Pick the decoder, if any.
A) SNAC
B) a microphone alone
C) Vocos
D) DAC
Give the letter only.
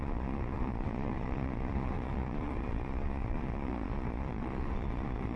C